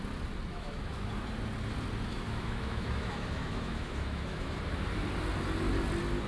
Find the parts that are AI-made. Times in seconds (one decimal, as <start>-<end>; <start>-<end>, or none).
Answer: 0.5-1.1; 2.1-4.6